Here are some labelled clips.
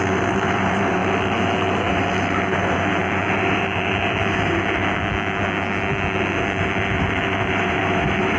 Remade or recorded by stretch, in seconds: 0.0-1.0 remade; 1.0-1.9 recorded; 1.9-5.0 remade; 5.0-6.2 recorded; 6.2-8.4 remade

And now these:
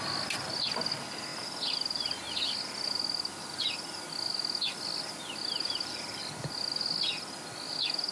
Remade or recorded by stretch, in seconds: 0.0-8.1 recorded

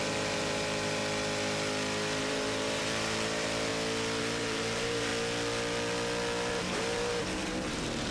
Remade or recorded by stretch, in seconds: 0.0-1.0 remade; 1.0-2.2 recorded; 2.2-3.7 remade; 3.7-4.2 recorded; 4.2-5.1 remade; 5.1-6.5 recorded; 6.5-8.1 remade

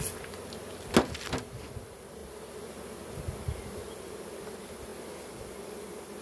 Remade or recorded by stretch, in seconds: 0.0-6.2 recorded

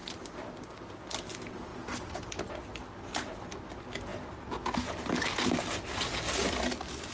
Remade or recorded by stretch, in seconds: 0.0-1.7 remade; 1.7-2.6 recorded; 2.6-4.1 remade; 4.1-5.5 recorded; 5.5-7.1 remade

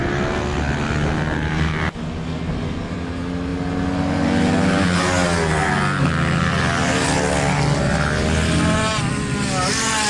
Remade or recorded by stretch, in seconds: 0.0-10.1 recorded